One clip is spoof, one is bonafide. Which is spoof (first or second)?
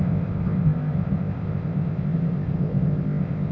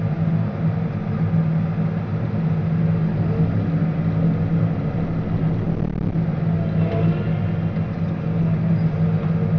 first